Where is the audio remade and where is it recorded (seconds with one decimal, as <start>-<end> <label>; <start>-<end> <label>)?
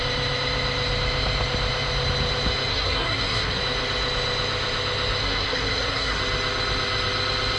0.0-2.7 recorded; 2.7-3.6 remade; 3.6-5.2 recorded; 5.2-6.2 remade; 6.2-7.6 recorded